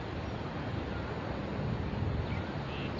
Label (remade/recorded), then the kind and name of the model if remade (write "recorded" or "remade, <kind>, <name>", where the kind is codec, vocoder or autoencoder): recorded